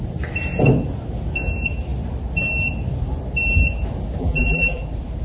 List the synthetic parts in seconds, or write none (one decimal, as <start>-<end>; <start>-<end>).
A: 4.2-4.8